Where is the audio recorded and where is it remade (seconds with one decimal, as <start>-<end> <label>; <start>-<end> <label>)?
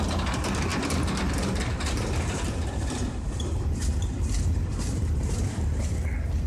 0.0-6.5 remade